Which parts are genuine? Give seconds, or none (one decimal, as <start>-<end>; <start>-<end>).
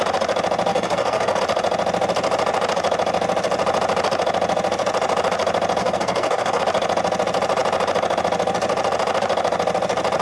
0.0-0.7; 1.4-5.8; 6.6-10.2